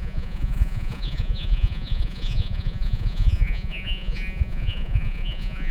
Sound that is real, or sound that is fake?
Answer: fake